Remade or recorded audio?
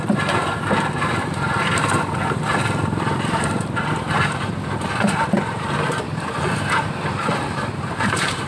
remade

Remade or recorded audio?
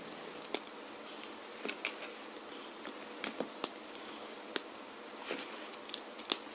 recorded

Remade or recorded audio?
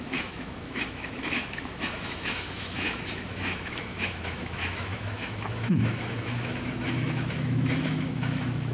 remade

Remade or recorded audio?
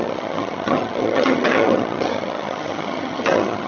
remade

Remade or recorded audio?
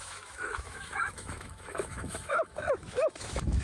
remade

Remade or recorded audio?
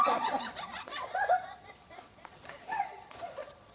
remade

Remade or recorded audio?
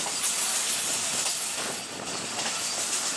recorded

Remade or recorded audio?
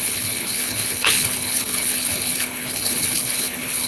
remade